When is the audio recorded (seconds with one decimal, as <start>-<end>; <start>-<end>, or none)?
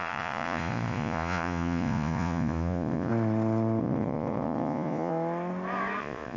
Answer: 3.1-3.8; 5.1-6.0